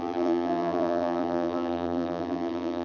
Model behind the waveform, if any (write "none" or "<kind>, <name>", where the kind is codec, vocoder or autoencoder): vocoder, BigVGAN v2